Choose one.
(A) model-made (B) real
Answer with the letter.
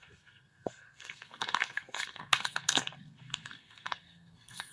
A